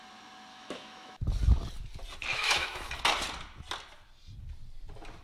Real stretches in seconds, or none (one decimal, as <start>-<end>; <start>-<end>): 0.0-0.5; 1.1-2.3; 2.9-5.2